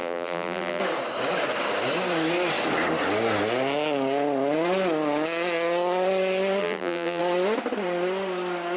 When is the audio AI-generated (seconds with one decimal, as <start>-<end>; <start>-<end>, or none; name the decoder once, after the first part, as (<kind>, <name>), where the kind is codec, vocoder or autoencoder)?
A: 0.0-0.8 (vocoder, BigVGAN v2); 6.6-7.2